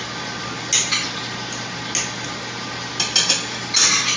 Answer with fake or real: real